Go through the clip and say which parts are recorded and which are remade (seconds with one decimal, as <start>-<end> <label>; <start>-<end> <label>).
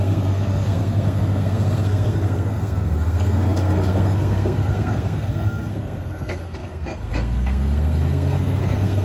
0.0-9.0 remade